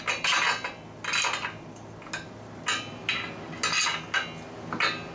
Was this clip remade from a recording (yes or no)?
no